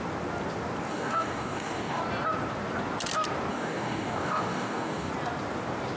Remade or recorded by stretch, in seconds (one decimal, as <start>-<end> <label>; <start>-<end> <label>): 0.0-0.9 recorded; 0.9-2.0 remade; 2.0-3.5 recorded; 3.5-5.1 remade; 5.1-6.0 recorded